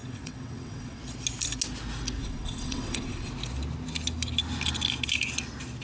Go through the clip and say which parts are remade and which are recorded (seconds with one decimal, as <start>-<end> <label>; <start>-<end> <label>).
0.0-1.0 remade; 1.0-2.2 recorded; 2.2-3.3 remade; 3.3-5.8 recorded